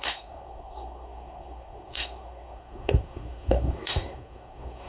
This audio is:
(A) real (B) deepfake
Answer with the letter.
B